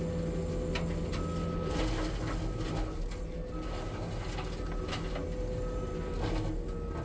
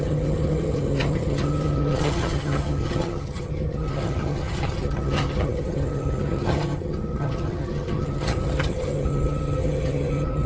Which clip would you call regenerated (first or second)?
second